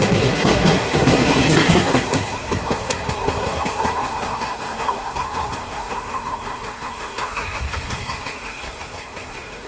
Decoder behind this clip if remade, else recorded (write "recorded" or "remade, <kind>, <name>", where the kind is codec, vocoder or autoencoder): remade, codec, SNAC